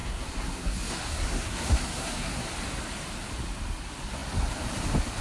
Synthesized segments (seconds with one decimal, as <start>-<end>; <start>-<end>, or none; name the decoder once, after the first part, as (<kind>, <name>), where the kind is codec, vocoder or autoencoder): 0.0-2.5 (codec, SNAC)